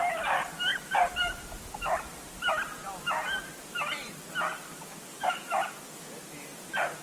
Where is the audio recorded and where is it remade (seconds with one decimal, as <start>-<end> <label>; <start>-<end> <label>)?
0.0-0.7 recorded; 0.7-4.1 remade; 4.1-5.1 recorded; 5.1-5.8 remade; 5.8-7.0 recorded

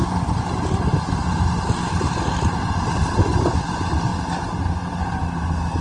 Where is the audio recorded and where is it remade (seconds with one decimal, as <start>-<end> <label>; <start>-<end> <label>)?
0.0-5.8 recorded

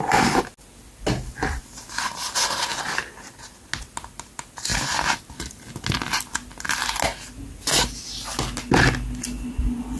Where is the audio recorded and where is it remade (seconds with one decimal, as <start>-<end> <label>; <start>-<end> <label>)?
0.0-10.0 recorded

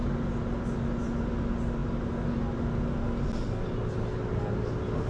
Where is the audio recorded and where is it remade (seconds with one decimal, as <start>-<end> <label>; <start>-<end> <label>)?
0.0-5.1 recorded

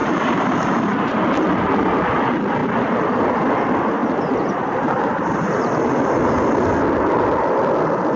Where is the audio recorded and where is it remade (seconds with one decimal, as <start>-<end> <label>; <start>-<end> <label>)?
0.0-0.7 remade; 0.7-4.0 recorded; 4.0-5.5 remade; 5.5-8.2 recorded

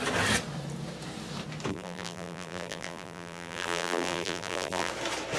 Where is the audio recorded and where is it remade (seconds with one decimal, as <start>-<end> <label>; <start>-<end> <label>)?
0.0-1.7 recorded; 1.7-4.9 remade; 4.9-5.4 recorded

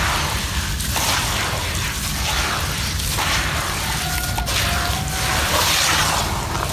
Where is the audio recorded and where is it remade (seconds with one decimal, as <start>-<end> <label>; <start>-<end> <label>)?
0.0-5.3 recorded; 5.3-6.0 remade; 6.0-6.7 recorded